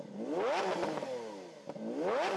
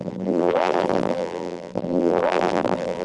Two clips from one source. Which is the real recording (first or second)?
first